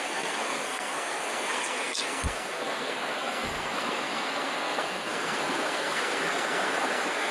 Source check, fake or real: fake